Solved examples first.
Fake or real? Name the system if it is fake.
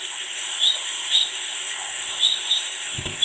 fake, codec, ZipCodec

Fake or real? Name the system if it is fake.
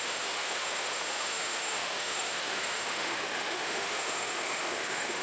fake, autoencoder, DAC-VAE